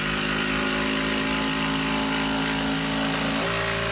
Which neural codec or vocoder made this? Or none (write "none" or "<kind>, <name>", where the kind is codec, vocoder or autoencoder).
none